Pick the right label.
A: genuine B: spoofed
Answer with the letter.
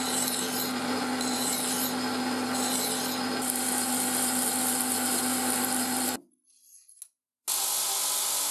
A